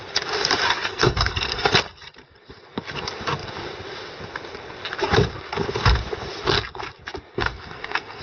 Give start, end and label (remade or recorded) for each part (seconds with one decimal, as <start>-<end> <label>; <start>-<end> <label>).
0.0-0.9 recorded; 0.9-1.7 remade; 1.7-7.3 recorded; 7.3-8.2 remade